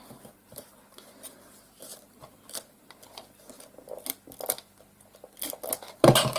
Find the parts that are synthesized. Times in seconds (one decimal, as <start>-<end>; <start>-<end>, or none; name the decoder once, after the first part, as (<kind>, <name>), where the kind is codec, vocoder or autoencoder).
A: 1.9-2.8 (vocoder, BigVGAN v2)